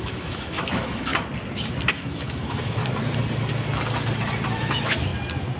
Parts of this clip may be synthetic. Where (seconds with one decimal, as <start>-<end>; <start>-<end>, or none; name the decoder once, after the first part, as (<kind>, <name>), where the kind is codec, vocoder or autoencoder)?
0.0-1.1 (autoencoder, DAC-VAE); 1.9-2.8; 4.6-5.1